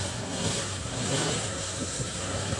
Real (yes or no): no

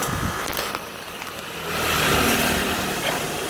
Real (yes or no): no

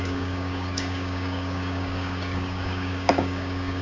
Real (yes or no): no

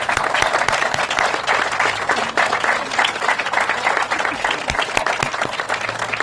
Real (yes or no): yes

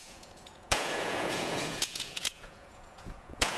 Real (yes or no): no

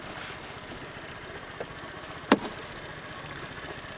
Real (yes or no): yes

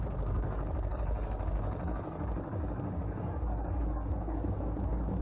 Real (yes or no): no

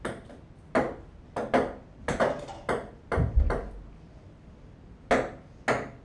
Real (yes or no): yes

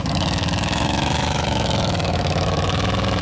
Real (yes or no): no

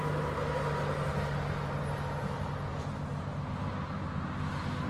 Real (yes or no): yes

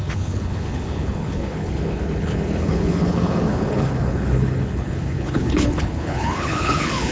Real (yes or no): no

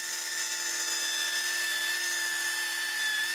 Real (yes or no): yes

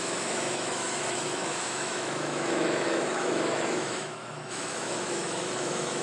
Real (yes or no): no